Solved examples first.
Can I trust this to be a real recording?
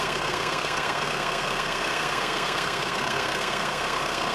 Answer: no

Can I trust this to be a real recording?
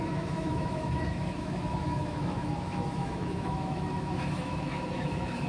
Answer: no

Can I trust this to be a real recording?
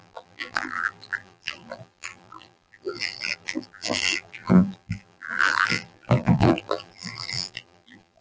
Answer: no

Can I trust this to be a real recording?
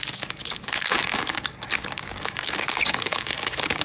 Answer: no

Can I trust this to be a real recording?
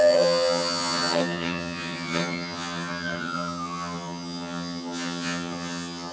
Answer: no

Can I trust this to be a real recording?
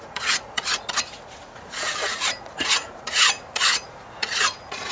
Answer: no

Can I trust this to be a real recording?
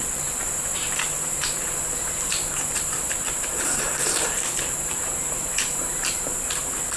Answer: no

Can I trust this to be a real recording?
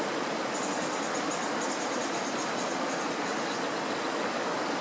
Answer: yes